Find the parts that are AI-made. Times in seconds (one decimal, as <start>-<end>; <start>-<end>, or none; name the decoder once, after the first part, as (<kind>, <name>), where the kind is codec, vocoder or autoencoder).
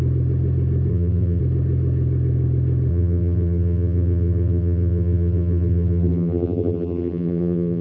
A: 0.9-1.4 (vocoder, BigVGAN v2); 2.9-7.8